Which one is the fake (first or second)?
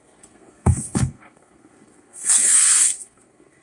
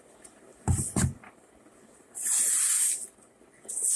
first